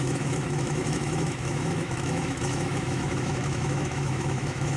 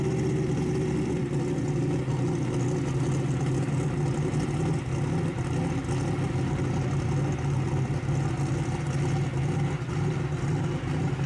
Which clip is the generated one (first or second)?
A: first